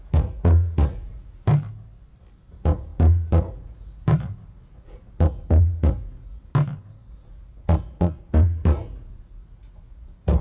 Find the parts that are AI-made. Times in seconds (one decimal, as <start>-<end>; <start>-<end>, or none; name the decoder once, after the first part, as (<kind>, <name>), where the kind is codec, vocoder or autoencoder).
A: 0.0-1.5 (vocoder, Vocos); 2.5-6.5; 7.1-10.4